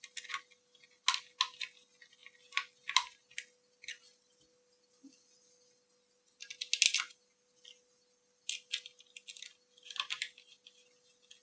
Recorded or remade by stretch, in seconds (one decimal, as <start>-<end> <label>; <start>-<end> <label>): 0.0-11.4 recorded